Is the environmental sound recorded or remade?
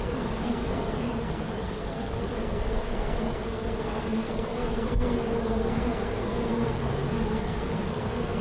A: remade